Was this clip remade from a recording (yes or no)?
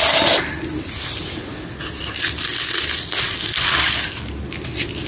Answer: no